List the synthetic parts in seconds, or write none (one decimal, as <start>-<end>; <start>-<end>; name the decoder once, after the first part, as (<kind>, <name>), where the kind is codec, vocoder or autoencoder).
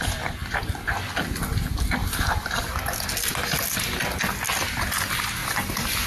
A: 0.4-1.1 (vocoder, BigVGAN v2); 2.0-2.6